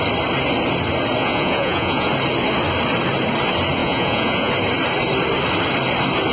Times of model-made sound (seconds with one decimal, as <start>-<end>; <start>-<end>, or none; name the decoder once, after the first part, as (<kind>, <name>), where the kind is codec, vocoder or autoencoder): 1.2-2.1 (vocoder, Vocos); 3.8-4.5